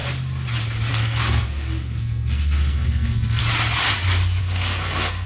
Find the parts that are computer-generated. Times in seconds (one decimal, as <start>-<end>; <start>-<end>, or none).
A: 0.9-3.4; 4.4-5.3